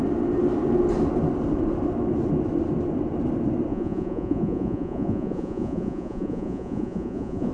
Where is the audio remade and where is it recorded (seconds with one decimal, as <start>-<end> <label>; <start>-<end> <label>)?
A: 0.0-3.7 recorded; 3.7-7.5 remade